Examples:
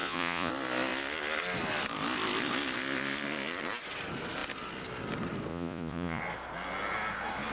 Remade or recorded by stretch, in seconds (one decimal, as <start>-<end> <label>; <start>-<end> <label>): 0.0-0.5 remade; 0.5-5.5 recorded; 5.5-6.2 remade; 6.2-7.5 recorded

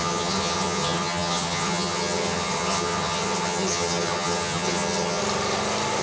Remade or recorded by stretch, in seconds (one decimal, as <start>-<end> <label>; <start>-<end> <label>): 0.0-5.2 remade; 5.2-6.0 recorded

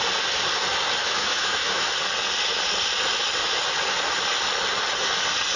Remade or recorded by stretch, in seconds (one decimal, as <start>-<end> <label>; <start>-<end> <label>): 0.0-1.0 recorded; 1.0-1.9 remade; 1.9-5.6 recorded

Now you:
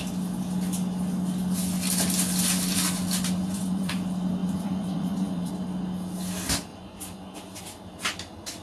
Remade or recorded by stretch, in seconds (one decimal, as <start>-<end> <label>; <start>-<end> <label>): 0.0-3.4 recorded; 3.4-3.9 remade; 3.9-4.4 recorded; 4.4-5.5 remade; 5.5-6.7 recorded; 6.7-7.6 remade; 7.6-8.6 recorded